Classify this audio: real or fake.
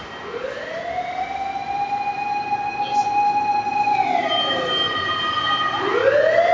real